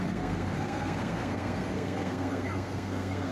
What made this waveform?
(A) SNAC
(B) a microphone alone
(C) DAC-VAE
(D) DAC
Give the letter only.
A